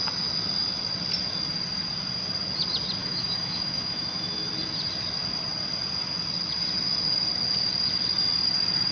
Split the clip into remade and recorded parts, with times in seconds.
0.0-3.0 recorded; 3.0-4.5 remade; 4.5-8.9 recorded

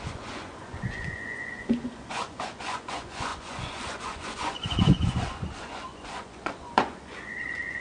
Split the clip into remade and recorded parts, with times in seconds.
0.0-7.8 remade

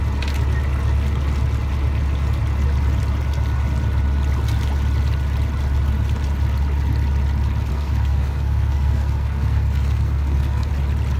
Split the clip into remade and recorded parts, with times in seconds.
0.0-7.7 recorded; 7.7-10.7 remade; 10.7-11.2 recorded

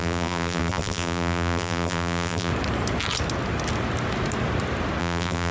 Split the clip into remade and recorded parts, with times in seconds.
0.0-2.5 remade; 2.5-5.0 recorded; 5.0-5.5 remade